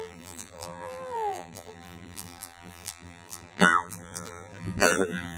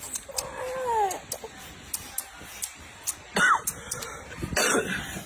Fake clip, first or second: first